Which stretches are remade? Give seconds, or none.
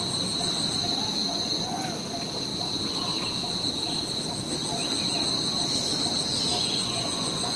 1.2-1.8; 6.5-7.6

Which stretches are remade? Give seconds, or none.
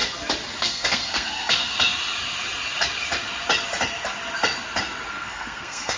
0.6-1.7; 5.1-6.0